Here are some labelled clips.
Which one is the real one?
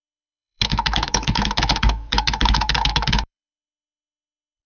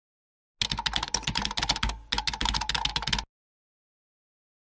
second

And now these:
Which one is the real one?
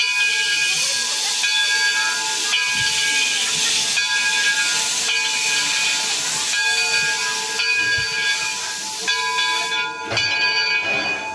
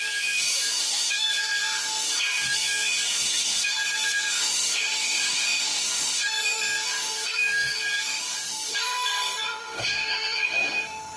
first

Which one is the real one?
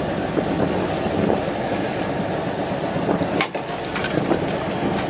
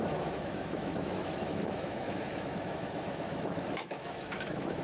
first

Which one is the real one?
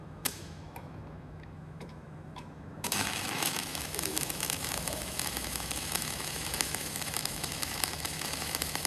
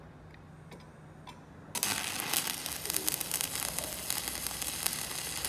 second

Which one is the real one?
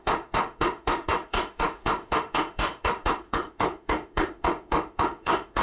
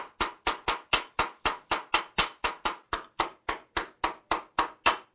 second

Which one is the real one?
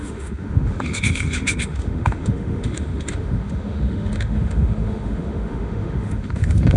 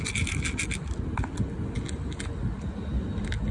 second